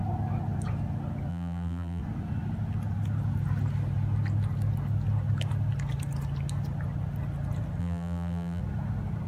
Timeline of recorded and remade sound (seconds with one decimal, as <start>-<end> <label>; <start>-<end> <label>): 0.0-1.3 recorded; 1.3-2.0 remade; 2.0-7.8 recorded; 7.8-8.6 remade; 8.6-9.3 recorded